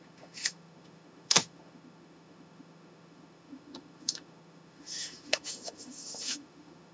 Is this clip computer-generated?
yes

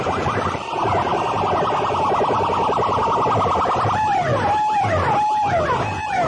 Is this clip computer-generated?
no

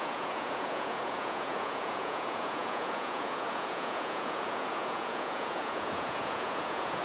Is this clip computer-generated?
yes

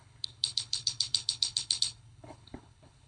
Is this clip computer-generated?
yes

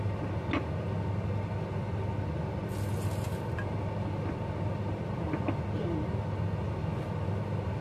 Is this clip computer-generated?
no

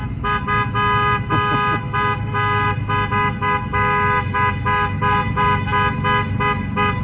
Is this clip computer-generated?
no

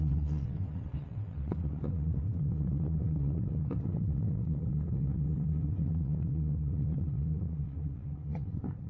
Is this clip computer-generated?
yes